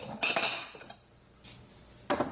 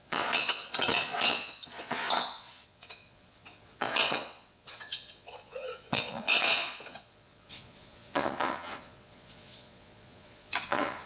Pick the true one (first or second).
first